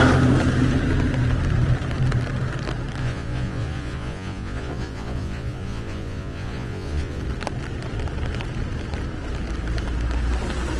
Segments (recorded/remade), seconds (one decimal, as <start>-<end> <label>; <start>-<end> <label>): 0.0-3.0 recorded; 3.0-7.2 remade; 7.2-10.8 recorded